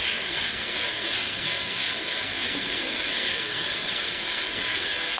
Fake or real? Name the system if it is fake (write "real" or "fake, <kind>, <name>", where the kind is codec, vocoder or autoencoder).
fake, codec, SNAC